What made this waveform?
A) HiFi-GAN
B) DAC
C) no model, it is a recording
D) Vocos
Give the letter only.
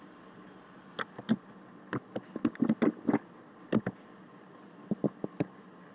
C